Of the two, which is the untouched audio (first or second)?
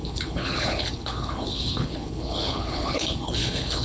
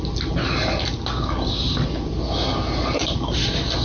second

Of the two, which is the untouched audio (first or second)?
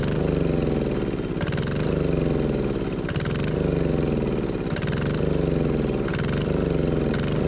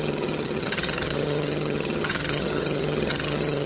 first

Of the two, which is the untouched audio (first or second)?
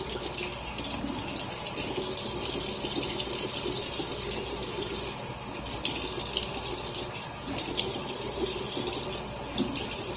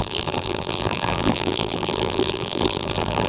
first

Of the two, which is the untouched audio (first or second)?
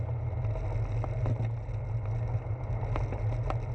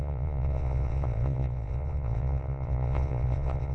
first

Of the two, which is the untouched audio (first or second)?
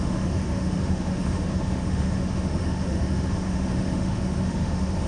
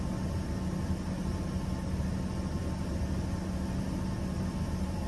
second